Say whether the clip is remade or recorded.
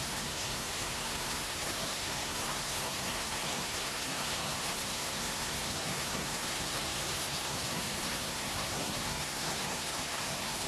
remade